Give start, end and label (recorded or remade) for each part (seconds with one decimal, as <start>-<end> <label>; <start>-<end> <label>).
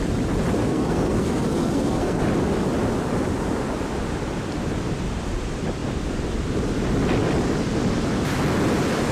0.0-0.6 recorded; 0.6-2.2 remade; 2.2-9.1 recorded